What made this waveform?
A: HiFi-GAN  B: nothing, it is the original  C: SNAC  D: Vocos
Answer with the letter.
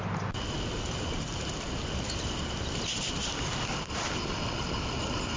B